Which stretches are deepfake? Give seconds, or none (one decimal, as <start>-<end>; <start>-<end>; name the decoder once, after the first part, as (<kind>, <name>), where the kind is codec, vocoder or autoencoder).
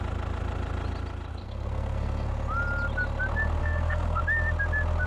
1.3-2.3 (codec, SNAC); 3.6-4.2